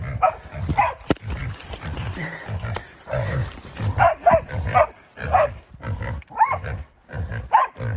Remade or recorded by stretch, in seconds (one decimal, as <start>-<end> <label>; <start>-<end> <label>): 0.0-1.4 recorded; 1.4-2.3 remade; 2.3-3.4 recorded; 3.4-4.0 remade; 4.0-4.7 recorded; 4.7-5.6 remade; 5.6-7.3 recorded; 7.3-8.0 remade